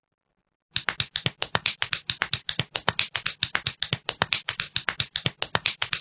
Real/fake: real